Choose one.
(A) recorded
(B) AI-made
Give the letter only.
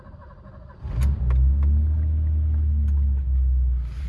A